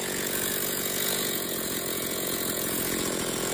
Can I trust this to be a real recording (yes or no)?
no